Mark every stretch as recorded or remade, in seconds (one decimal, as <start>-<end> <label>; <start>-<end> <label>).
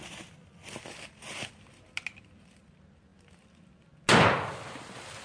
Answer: 0.0-5.2 recorded